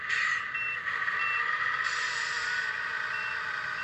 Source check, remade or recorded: recorded